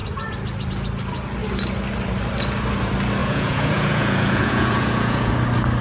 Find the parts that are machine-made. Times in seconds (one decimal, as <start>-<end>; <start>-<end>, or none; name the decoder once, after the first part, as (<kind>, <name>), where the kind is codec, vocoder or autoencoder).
3.2-5.3 (vocoder, Vocos)